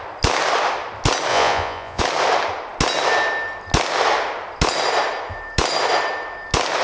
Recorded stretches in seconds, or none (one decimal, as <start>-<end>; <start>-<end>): 0.0-1.3; 2.0-6.8